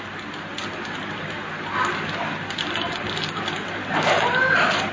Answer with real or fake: real